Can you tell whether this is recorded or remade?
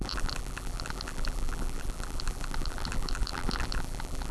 remade